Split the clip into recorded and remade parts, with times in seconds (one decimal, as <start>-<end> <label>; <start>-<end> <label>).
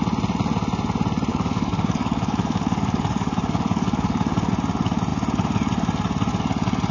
0.0-1.3 recorded; 1.3-4.5 remade; 4.5-6.9 recorded